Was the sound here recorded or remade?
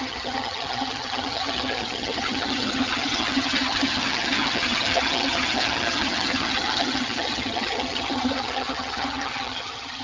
remade